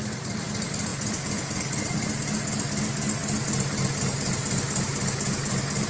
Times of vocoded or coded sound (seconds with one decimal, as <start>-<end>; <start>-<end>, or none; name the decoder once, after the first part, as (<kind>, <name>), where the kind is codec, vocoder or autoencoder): 0.9-1.6 (vocoder, Vocos)

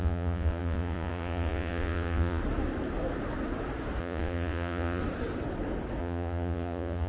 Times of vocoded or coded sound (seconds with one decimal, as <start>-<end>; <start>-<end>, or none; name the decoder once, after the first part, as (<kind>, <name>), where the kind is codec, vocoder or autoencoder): 0.0-2.4 (vocoder, Vocos); 4.0-5.0; 6.0-7.1

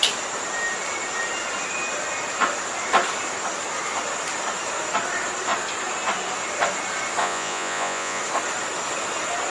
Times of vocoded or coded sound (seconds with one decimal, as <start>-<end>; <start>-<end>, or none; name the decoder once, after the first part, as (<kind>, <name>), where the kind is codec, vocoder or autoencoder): 7.2-8.2 (vocoder, Vocos)

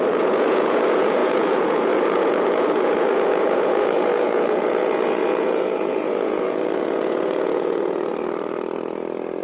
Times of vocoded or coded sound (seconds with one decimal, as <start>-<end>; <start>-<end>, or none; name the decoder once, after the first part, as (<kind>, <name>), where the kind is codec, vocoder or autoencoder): 0.0-8.1 (vocoder, Vocos)

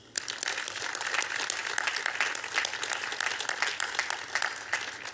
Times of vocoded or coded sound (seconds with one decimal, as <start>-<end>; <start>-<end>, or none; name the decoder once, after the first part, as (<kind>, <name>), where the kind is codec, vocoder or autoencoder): none